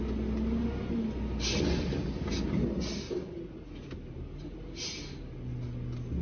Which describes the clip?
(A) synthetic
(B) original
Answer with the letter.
B